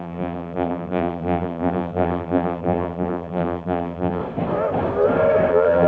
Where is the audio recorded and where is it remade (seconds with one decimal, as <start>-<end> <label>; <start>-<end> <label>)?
0.0-4.2 remade; 4.2-5.5 recorded; 5.5-5.9 remade